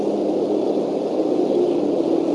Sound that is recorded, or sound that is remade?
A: recorded